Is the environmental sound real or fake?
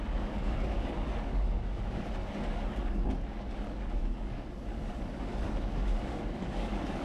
fake